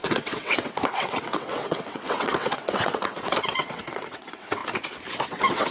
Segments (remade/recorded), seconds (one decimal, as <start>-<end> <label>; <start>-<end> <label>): 0.0-4.6 remade; 4.6-5.3 recorded; 5.3-5.7 remade